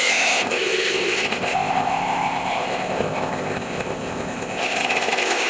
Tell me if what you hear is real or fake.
fake